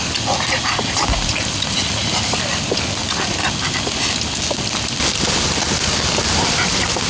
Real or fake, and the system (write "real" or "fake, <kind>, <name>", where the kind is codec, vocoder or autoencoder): real